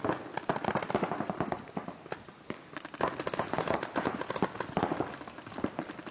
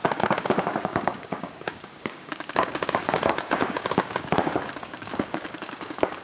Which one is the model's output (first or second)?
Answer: second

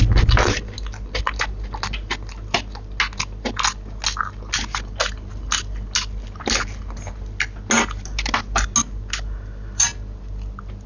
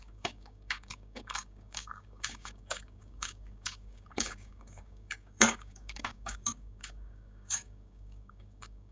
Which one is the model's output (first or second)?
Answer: second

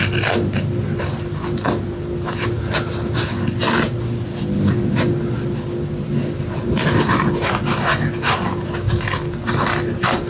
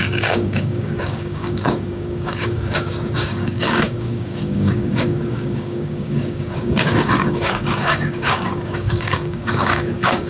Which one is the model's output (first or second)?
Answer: second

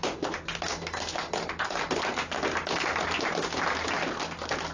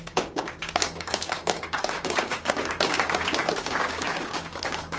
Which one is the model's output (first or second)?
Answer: second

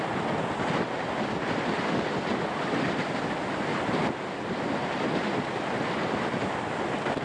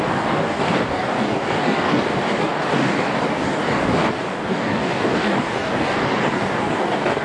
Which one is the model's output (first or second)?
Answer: second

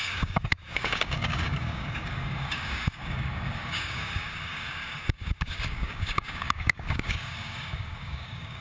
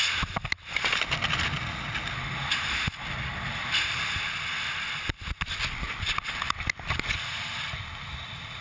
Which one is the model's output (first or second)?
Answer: first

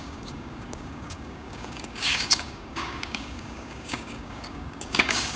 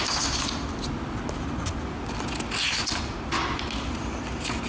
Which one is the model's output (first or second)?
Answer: first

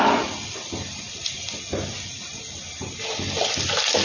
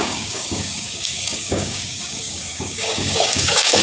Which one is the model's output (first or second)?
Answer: second